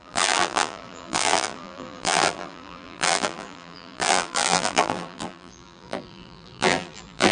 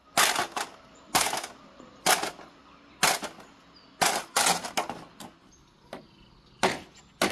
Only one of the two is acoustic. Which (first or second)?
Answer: second